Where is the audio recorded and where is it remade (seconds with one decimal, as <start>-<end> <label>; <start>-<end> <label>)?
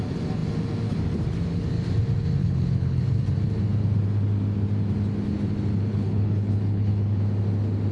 0.0-2.4 recorded; 2.4-3.0 remade; 3.0-5.9 recorded; 5.9-7.2 remade; 7.2-7.9 recorded